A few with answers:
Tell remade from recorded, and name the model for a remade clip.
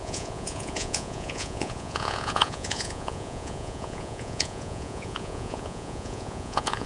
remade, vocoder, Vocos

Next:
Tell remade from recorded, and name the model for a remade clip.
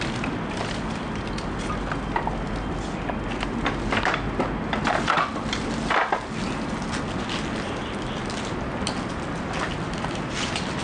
recorded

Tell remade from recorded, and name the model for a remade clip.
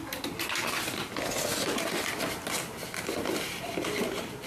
recorded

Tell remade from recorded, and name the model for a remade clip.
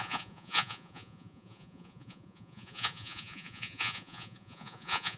remade, vocoder, Vocos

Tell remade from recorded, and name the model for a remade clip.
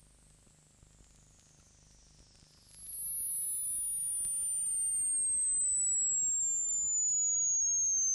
recorded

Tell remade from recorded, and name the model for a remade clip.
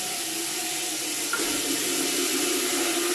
recorded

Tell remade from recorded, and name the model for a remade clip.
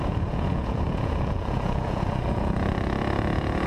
remade, vocoder, Vocos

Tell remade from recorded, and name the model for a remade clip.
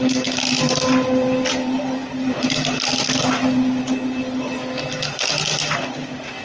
recorded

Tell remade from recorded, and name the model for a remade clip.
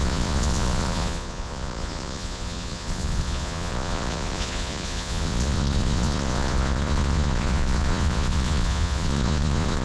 remade, vocoder, Vocos